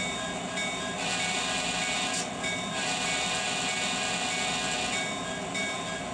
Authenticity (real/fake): real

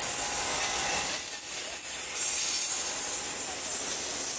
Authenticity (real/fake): real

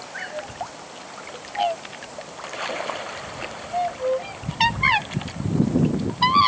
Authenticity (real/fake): real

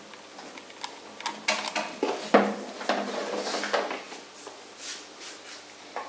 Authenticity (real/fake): real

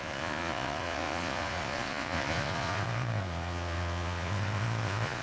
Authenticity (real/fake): fake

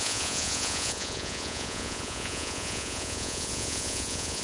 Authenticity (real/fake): fake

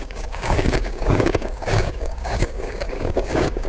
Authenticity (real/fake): fake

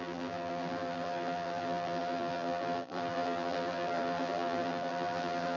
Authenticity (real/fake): fake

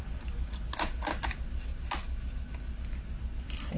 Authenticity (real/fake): real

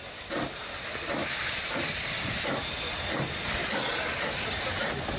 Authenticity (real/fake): real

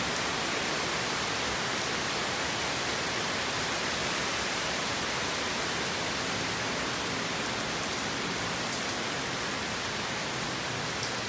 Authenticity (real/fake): real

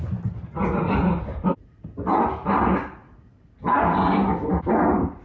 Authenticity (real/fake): real